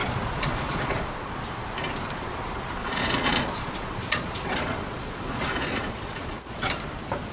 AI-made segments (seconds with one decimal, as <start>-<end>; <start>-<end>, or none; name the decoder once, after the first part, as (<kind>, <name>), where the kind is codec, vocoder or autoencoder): 0.0-1.0 (vocoder, Vocos); 2.8-6.7